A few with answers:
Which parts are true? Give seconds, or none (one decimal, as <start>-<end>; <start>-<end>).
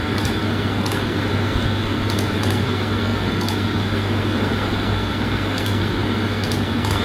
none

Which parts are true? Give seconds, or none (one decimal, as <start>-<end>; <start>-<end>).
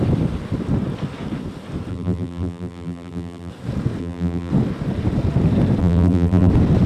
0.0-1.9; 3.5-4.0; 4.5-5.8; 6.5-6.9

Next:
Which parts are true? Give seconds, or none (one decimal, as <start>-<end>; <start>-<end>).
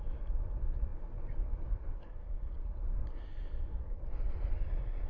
0.0-5.1